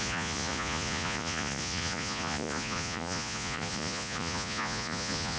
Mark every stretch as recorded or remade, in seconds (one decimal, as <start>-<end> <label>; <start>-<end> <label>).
0.0-5.4 remade